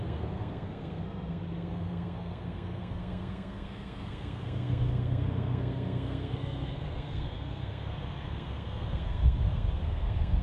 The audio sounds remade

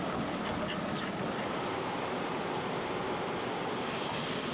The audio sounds recorded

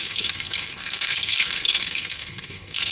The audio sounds remade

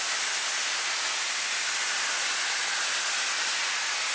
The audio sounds recorded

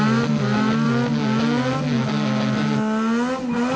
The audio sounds recorded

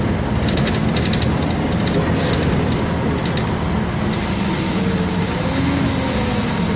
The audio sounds recorded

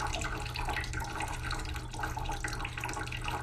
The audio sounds recorded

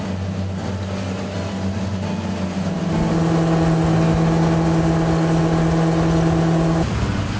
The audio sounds recorded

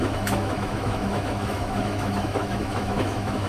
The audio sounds remade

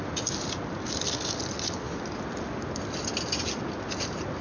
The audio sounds recorded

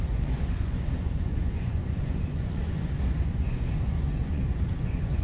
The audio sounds remade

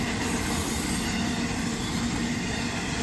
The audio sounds recorded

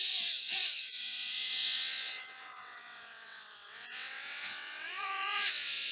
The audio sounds remade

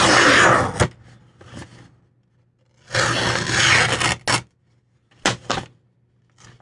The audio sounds recorded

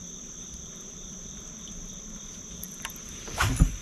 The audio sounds remade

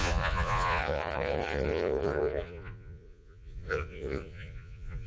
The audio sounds remade